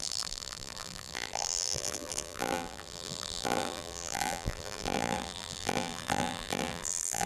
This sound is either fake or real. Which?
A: fake